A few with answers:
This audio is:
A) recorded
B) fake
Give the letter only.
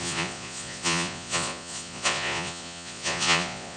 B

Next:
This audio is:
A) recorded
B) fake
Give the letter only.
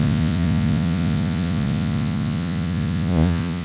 B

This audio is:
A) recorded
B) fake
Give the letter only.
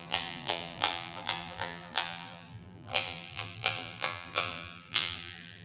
B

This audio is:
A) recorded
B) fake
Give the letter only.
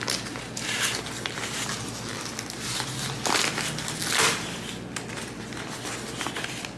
A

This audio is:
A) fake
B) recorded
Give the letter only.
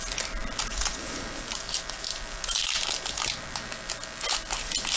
B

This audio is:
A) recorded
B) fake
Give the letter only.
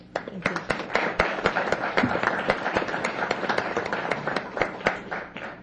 B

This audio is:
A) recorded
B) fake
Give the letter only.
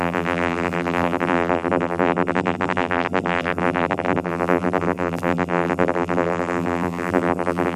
B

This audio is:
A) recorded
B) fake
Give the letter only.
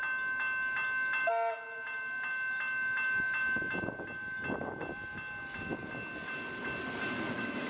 A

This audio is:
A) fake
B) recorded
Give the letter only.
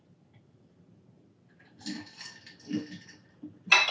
B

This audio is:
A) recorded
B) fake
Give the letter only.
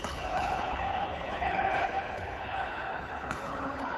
B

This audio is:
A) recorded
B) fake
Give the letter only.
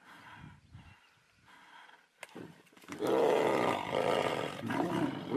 B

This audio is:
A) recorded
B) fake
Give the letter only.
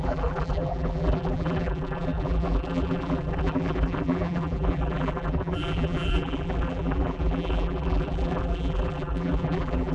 B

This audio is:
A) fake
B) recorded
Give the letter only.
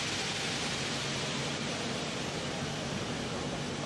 A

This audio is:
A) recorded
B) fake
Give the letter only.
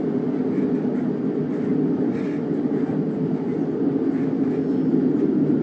A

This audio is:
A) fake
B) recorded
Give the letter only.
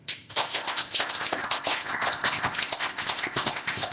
A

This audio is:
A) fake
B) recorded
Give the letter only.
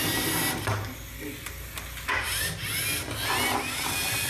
B